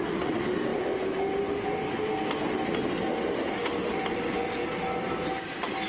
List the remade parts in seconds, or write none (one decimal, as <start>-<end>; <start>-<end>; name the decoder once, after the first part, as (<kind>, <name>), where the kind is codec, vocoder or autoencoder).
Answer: none